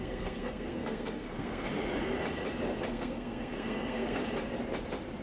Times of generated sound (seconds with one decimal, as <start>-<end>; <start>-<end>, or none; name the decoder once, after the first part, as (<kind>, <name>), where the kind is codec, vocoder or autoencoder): 0.0-1.7 (codec, SNAC); 2.9-4.2